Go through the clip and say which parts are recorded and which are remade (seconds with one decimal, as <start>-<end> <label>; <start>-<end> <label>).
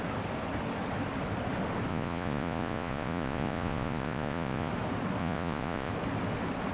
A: 0.0-1.9 recorded; 1.9-4.7 remade; 4.7-5.2 recorded; 5.2-5.9 remade; 5.9-6.7 recorded